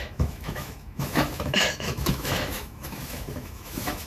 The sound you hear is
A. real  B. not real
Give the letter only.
B